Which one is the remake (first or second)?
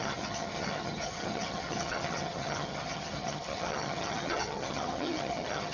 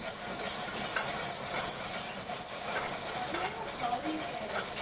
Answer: first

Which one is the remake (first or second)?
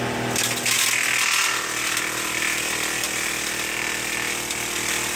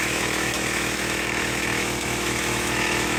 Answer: second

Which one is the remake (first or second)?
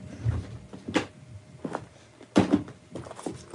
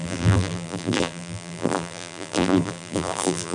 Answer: second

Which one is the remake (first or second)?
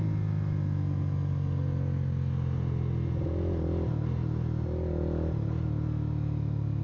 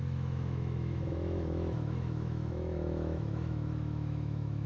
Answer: second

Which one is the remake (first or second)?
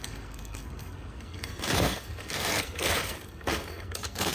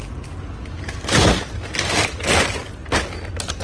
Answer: first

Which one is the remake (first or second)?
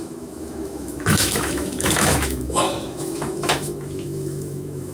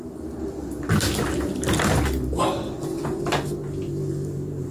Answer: first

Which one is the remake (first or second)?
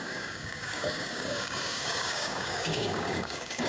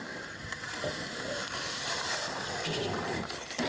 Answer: first